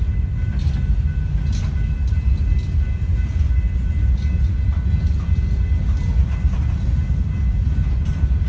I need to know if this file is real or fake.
real